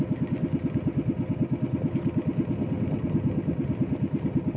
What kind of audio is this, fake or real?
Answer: real